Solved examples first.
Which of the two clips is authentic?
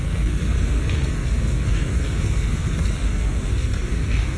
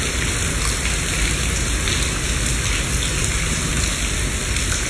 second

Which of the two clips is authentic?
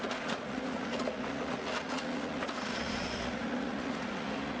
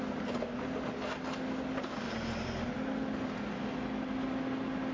second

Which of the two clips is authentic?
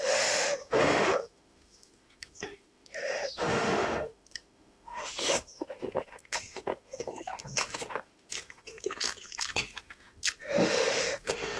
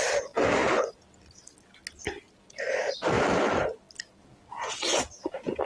second